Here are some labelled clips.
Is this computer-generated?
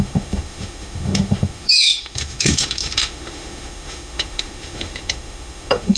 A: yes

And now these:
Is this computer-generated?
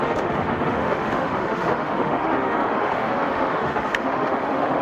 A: yes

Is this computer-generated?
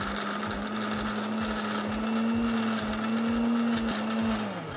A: no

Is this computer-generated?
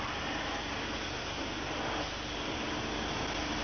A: no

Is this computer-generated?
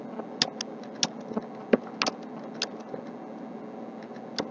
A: no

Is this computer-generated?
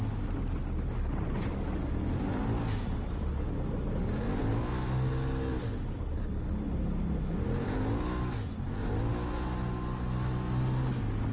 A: no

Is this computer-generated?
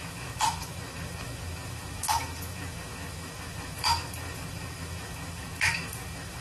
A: yes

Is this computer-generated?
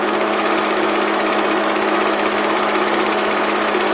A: yes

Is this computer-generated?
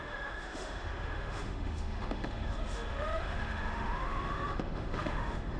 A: yes